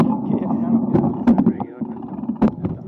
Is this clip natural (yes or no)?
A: no